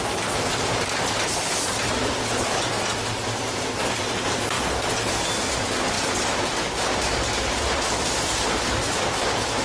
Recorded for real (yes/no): no